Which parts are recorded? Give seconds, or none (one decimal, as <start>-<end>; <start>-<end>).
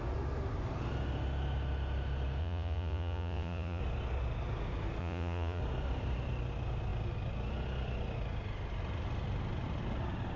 0.0-2.4; 3.8-5.0; 5.6-10.4